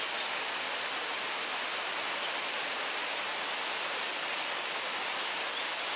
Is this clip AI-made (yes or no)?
no